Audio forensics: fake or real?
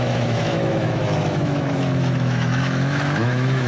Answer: fake